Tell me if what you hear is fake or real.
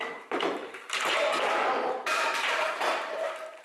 fake